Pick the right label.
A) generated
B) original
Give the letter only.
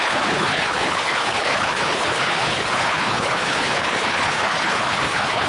A